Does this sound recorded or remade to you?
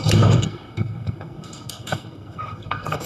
remade